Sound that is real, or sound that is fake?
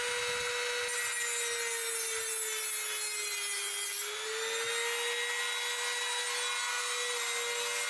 real